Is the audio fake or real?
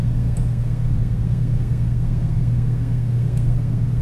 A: fake